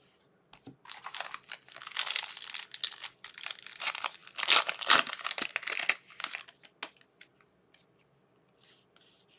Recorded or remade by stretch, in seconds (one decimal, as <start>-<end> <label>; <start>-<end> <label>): 0.0-9.4 recorded